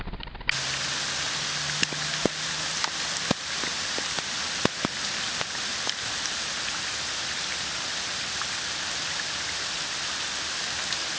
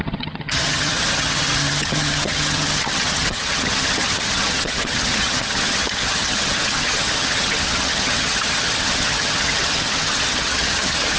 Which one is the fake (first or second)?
second